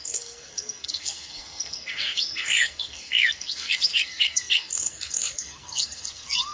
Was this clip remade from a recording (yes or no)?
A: yes